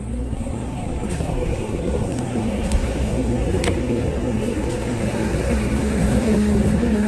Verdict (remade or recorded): remade